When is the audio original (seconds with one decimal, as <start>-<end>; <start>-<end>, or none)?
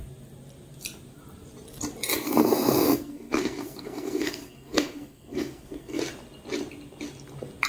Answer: 0.0-2.2; 6.0-7.7